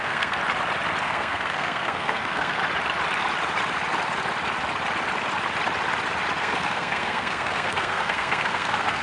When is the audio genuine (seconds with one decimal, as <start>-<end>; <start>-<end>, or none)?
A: 0.4-1.0; 2.6-6.4